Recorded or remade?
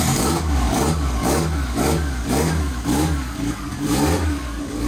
remade